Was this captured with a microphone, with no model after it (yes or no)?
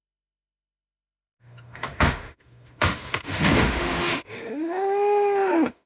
no